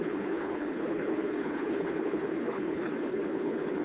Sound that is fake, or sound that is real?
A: fake